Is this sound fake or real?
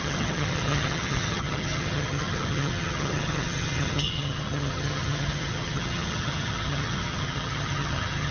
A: fake